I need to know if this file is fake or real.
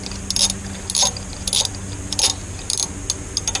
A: real